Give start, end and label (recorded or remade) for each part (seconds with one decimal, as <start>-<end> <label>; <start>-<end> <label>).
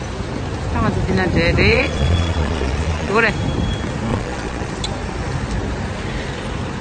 0.0-1.7 recorded; 1.7-3.1 remade; 3.1-4.1 recorded; 4.1-4.7 remade; 4.7-6.8 recorded